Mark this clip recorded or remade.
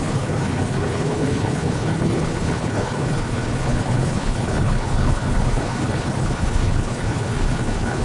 remade